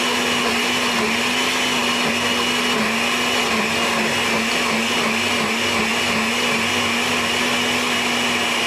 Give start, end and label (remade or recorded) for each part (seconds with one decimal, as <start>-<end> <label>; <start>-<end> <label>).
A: 0.0-8.7 recorded